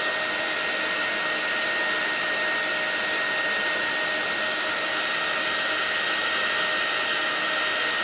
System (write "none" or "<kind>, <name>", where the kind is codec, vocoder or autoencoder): none